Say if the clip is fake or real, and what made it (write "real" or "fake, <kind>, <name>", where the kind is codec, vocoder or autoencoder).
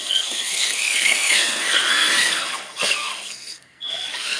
fake, codec, SNAC